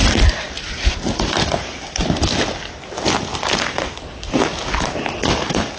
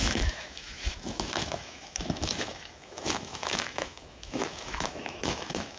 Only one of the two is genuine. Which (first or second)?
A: first